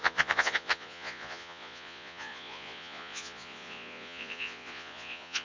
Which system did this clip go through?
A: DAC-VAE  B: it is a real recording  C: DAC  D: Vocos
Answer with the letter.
D